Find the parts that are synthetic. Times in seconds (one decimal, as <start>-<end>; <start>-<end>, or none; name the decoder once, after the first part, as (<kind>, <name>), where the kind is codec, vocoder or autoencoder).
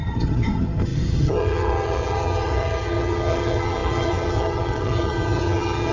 0.0-5.9 (vocoder, HiFi-GAN)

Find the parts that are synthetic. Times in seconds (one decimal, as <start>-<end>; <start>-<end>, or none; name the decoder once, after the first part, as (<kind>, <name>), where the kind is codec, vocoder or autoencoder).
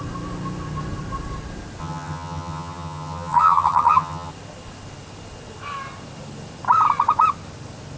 1.8-4.3 (vocoder, HiFi-GAN)